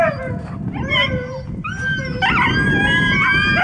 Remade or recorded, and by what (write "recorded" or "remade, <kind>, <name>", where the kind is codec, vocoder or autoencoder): recorded